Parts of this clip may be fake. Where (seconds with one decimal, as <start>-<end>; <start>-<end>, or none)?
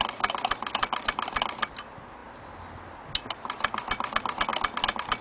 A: none